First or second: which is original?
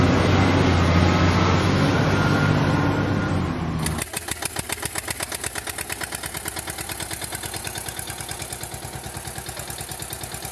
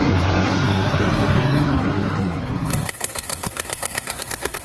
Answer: first